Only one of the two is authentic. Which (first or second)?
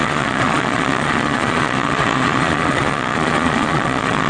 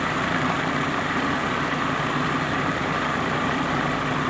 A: second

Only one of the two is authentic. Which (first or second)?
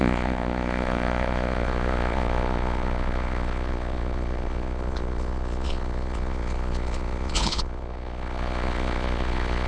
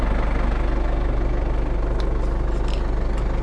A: second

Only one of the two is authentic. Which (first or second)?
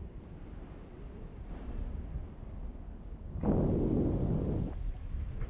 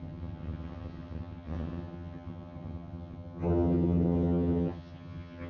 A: first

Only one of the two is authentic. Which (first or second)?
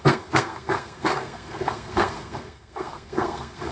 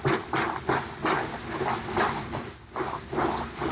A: second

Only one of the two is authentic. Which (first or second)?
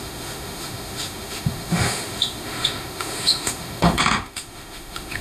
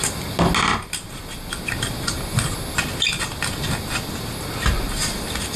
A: second